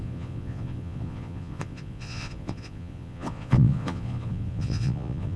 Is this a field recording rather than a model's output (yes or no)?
no